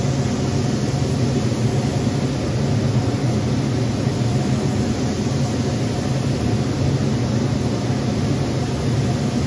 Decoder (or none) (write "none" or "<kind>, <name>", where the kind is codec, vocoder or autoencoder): none